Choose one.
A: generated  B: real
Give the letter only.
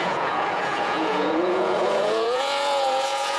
A